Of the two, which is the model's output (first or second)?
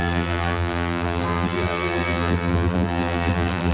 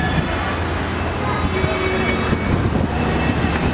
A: first